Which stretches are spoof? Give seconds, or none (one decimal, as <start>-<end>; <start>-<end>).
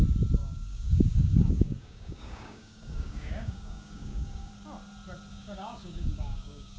0.4-4.5; 5.3-6.8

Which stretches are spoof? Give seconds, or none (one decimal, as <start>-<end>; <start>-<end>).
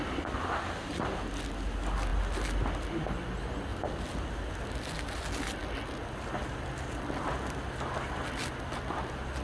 none